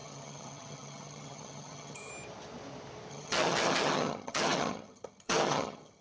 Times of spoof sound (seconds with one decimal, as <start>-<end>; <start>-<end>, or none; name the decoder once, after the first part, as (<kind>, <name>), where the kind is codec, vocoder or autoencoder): 0.0-2.1 (vocoder, HiFi-GAN); 3.1-6.0